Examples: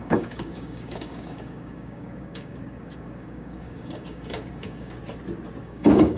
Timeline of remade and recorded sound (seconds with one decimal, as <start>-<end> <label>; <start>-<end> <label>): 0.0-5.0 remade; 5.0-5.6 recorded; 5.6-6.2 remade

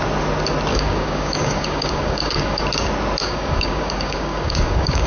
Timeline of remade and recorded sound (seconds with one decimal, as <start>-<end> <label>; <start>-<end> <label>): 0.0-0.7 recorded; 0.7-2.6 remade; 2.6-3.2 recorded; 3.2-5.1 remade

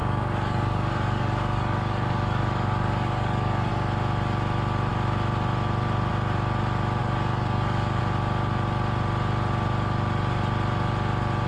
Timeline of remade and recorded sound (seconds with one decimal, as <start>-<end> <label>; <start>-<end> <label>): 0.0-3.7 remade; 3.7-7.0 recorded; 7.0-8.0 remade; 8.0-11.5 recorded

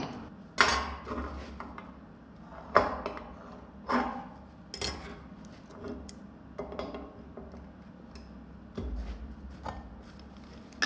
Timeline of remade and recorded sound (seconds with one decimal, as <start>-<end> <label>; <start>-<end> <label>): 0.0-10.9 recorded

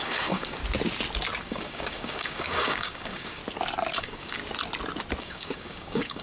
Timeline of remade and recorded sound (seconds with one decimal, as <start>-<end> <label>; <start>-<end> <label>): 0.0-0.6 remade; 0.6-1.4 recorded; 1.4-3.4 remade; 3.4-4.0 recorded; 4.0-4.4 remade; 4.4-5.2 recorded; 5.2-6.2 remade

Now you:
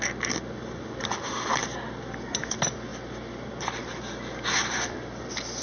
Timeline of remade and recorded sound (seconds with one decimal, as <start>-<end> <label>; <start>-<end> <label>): 0.0-5.6 recorded

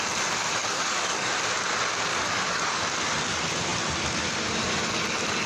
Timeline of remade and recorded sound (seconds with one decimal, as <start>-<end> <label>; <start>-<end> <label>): 0.0-0.6 recorded; 0.6-1.3 remade; 1.3-2.1 recorded; 2.1-2.8 remade; 2.8-5.5 recorded